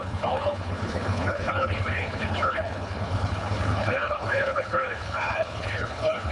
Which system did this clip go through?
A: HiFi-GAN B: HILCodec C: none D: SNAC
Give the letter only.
B